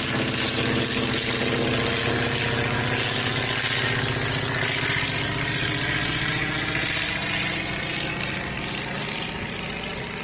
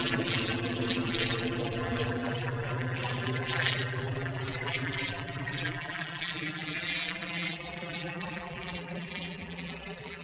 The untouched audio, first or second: first